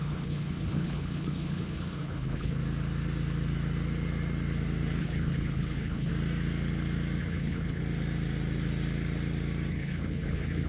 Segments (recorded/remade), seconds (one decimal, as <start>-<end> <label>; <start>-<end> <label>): 0.0-2.6 remade; 2.6-5.0 recorded; 5.0-6.1 remade; 6.1-7.2 recorded; 7.2-7.8 remade; 7.8-9.7 recorded; 9.7-10.7 remade

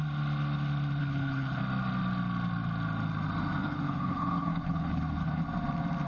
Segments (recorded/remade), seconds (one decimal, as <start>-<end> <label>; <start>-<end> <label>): 0.0-1.0 recorded; 1.0-1.6 remade; 1.6-3.6 recorded; 3.6-5.4 remade; 5.4-6.1 recorded